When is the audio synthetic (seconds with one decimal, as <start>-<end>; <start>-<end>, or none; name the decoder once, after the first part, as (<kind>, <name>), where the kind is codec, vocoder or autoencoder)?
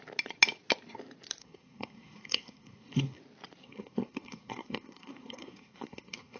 1.4-3.2 (codec, SNAC); 3.6-6.4